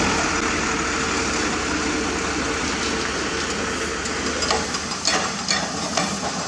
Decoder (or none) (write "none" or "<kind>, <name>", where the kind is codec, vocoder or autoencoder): none